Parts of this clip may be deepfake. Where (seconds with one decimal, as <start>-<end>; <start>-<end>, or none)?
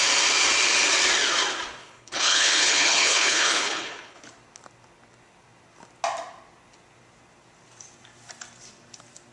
1.8-4.2